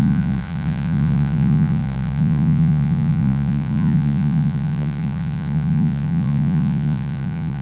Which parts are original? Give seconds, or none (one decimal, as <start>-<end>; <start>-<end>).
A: none